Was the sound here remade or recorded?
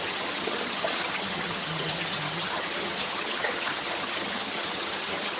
remade